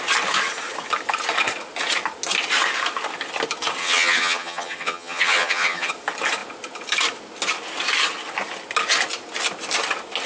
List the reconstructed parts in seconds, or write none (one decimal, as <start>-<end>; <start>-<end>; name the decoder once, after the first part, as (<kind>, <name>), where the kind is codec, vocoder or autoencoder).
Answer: 3.8-5.9 (vocoder, HiFi-GAN)